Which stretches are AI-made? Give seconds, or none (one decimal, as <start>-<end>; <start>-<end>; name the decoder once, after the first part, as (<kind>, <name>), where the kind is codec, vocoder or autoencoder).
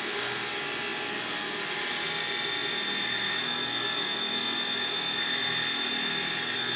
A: none